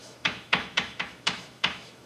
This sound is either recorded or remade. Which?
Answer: remade